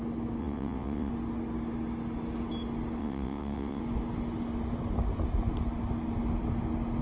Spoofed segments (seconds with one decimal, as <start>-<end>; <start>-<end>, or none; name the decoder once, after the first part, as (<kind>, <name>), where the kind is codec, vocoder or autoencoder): 0.4-1.1 (vocoder, WaveNeXt); 3.0-3.8